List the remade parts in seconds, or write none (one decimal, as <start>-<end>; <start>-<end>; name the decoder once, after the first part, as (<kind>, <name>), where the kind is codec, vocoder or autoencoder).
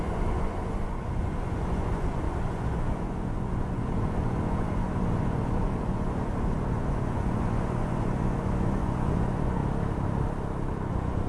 0.0-9.6 (vocoder, Vocos); 10.9-11.3